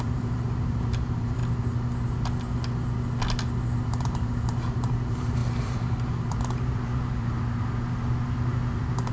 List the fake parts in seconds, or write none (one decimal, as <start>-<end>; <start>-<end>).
0.0-1.4; 3.8-9.1